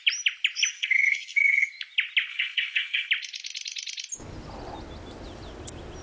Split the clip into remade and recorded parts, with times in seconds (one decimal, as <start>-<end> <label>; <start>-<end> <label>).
0.0-0.7 recorded; 0.7-1.7 remade; 1.7-2.3 recorded; 2.3-3.1 remade; 3.1-6.0 recorded